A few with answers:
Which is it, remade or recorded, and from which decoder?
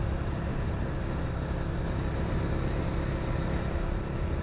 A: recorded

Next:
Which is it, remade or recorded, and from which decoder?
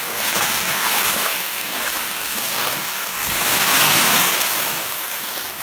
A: remade, codec, DAC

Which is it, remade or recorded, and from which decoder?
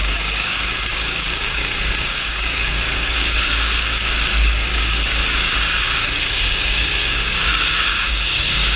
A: remade, codec, DAC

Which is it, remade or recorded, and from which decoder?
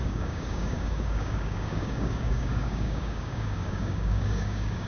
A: remade, codec, DAC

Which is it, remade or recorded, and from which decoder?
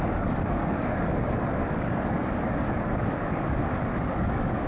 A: remade, codec, DAC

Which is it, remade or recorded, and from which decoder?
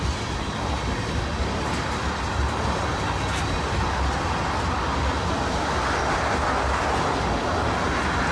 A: recorded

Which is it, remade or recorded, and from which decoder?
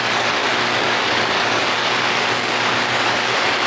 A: remade, codec, DAC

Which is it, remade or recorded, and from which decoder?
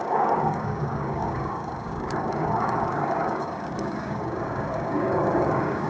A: remade, codec, DAC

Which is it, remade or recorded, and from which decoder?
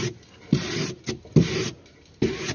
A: recorded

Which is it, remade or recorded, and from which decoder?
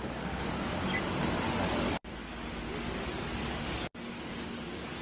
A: remade, codec, DAC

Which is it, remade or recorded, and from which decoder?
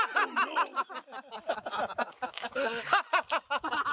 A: recorded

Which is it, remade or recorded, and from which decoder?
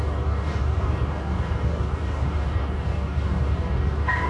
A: remade, codec, DAC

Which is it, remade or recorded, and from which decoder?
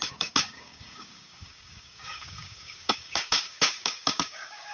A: remade, codec, DAC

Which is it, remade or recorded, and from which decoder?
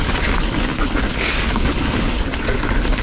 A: remade, codec, DAC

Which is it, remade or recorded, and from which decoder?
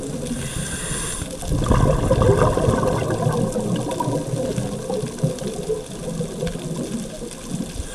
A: recorded